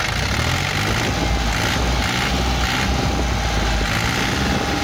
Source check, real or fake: real